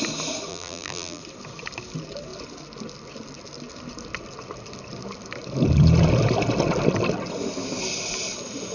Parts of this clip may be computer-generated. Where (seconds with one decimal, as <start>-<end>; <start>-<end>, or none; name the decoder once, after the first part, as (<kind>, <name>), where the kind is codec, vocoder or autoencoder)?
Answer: 0.5-1.2 (vocoder, BigVGAN v2)